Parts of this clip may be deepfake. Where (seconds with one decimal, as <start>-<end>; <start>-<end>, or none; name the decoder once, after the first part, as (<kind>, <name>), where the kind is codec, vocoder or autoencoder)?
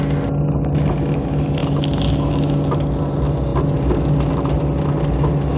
none